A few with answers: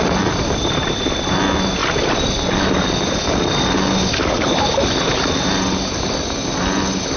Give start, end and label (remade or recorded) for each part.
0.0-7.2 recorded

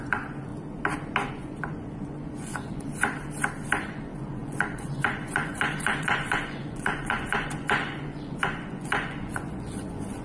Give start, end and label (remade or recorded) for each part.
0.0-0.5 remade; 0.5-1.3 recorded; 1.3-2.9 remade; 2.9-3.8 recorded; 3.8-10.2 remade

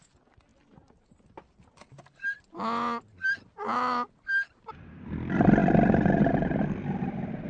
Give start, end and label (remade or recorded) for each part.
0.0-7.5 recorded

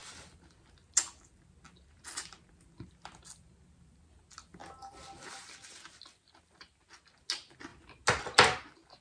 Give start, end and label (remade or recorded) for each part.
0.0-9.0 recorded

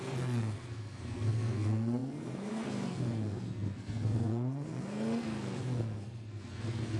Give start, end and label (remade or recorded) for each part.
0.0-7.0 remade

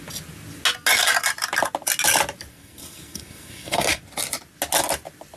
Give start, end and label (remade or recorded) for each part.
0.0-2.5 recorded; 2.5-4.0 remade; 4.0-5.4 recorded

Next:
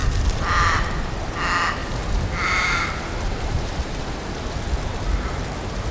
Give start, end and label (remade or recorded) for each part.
0.0-1.1 remade; 1.1-1.8 recorded; 1.8-4.0 remade; 4.0-5.9 recorded

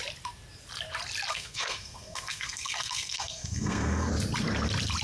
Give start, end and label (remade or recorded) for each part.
0.0-1.3 recorded; 1.3-4.1 remade; 4.1-5.0 recorded